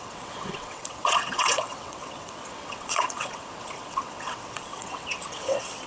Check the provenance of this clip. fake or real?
fake